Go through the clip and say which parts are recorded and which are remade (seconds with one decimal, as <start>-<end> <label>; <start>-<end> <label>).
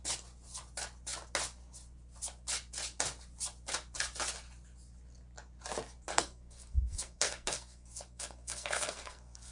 0.0-6.1 recorded; 6.1-9.5 remade